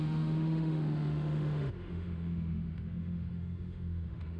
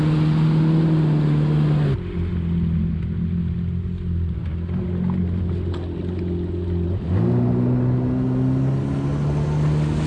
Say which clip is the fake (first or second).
first